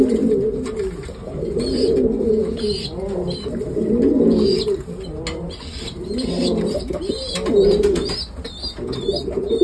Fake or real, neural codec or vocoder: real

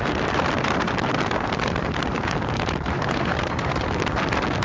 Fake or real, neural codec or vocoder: fake, vocoder, BigVGAN v2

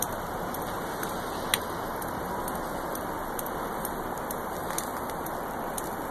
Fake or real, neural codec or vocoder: real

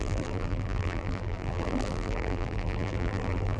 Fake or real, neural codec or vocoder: fake, vocoder, BigVGAN v2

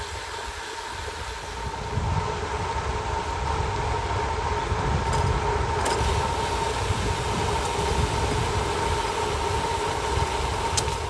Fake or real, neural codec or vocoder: real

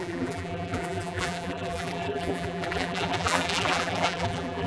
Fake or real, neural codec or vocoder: fake, vocoder, BigVGAN v2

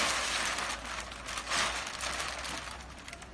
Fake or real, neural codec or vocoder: real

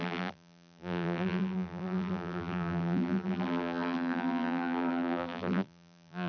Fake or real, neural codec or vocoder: fake, vocoder, BigVGAN v2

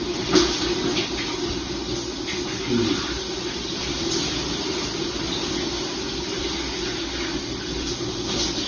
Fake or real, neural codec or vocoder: real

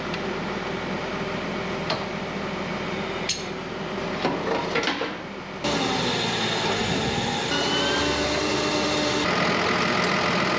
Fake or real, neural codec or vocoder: real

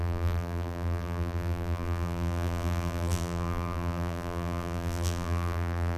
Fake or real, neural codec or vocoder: fake, vocoder, BigVGAN v2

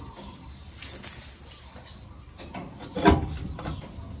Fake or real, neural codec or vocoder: real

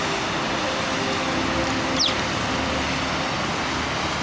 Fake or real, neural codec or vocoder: real